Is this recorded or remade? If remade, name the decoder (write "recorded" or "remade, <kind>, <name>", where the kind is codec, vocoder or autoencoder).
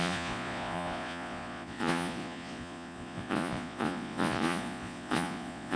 remade, vocoder, Vocos